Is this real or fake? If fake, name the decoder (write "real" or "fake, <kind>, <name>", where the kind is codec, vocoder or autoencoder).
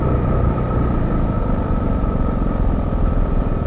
fake, vocoder, BigVGAN v2